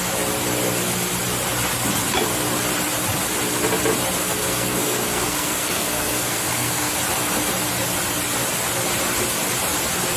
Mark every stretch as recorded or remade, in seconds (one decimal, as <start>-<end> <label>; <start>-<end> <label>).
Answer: 0.0-4.2 recorded; 4.2-6.9 remade; 6.9-10.2 recorded